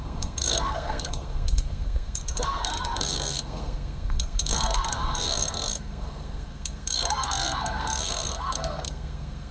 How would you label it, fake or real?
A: fake